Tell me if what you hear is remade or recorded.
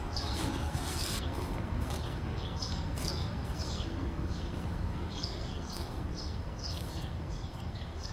remade